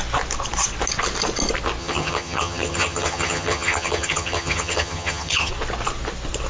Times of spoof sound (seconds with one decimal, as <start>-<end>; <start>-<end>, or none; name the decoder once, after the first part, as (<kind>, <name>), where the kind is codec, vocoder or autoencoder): 1.8-5.5 (vocoder, HiFi-GAN)